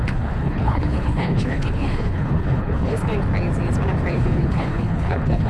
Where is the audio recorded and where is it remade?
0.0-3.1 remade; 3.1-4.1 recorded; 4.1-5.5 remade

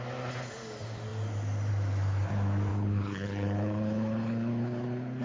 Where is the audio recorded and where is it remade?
0.0-2.7 recorded; 2.7-5.2 remade

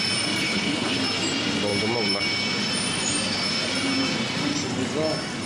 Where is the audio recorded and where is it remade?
0.0-0.4 recorded; 0.4-1.0 remade; 1.0-5.5 recorded

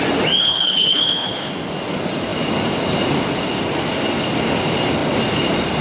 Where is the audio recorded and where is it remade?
0.0-0.4 recorded; 0.4-1.5 remade; 1.5-5.8 recorded

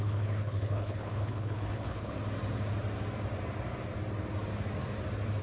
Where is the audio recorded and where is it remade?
0.0-2.1 remade; 2.1-5.4 recorded

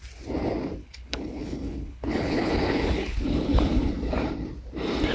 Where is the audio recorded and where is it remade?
0.0-0.8 recorded; 0.8-3.9 remade; 3.9-5.1 recorded

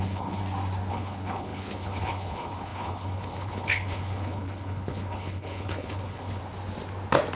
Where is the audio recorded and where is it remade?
0.0-0.4 remade; 0.4-0.9 recorded; 0.9-6.4 remade; 6.4-7.4 recorded